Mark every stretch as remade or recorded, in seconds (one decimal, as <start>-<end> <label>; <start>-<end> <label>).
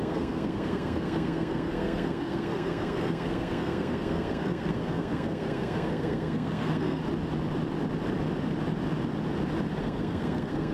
0.0-7.0 remade; 7.0-9.8 recorded; 9.8-10.7 remade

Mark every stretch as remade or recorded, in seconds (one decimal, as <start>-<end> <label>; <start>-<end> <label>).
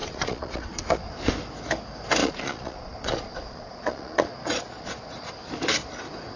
0.0-1.3 remade; 1.3-2.2 recorded; 2.2-5.3 remade; 5.3-6.4 recorded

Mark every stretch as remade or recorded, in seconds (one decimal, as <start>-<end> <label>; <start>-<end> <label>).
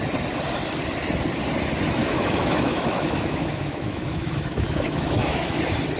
0.0-2.0 recorded; 2.0-5.6 remade; 5.6-6.0 recorded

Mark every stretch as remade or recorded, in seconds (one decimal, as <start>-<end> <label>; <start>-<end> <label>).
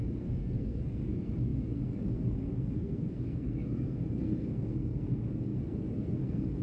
0.0-6.6 remade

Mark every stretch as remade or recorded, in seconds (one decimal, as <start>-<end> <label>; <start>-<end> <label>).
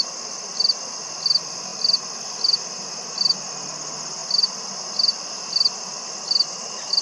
0.0-7.0 recorded